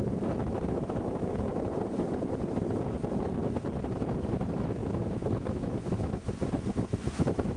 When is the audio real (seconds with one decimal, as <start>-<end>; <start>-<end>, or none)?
1.5-4.1; 6.2-6.7